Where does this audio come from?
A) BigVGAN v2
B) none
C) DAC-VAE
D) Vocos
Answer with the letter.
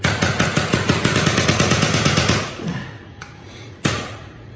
D